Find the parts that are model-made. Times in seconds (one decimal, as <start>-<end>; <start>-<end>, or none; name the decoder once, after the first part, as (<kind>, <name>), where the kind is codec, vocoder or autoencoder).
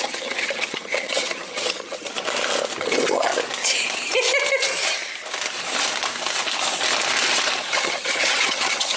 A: 0.0-2.1 (vocoder, HiFi-GAN); 2.8-3.3; 7.7-9.0